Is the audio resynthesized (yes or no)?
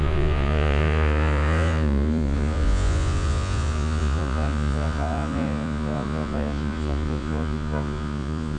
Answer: yes